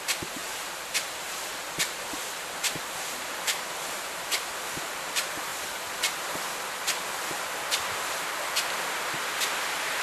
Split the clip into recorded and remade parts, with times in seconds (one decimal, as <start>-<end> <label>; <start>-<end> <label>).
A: 0.0-5.5 remade; 5.5-9.6 recorded; 9.6-10.0 remade